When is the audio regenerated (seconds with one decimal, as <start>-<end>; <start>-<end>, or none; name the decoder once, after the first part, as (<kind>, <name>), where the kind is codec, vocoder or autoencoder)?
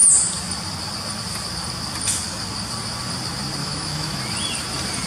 3.6-4.2 (autoencoder, DAC-VAE)